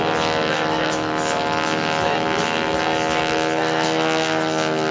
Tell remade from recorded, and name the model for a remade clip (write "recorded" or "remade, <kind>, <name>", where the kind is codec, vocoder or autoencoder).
recorded